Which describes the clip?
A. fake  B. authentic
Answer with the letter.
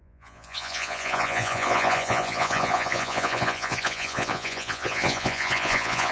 A